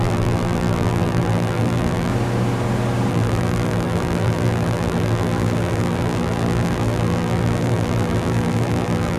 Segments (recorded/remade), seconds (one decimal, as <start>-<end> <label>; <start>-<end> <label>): 0.0-2.1 remade; 2.1-3.1 recorded; 3.1-9.2 remade